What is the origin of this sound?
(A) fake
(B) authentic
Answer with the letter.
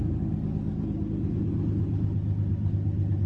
B